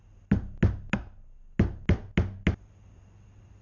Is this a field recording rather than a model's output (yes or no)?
yes